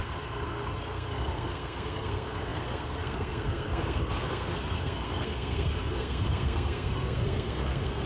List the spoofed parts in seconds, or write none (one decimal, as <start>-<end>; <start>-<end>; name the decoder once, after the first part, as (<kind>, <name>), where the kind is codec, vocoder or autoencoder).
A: 0.0-8.1 (codec, SNAC)